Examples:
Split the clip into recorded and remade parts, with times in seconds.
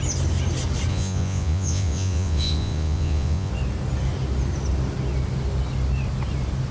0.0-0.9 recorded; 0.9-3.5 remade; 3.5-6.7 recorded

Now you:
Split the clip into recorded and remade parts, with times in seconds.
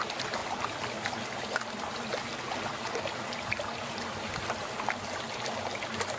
0.0-6.2 recorded